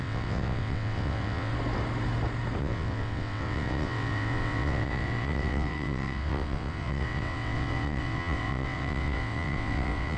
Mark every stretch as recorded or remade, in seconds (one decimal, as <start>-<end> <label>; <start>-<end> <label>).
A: 0.0-1.5 remade; 1.5-2.6 recorded; 2.6-10.2 remade